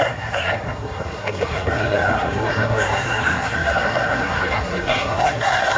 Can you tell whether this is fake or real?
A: fake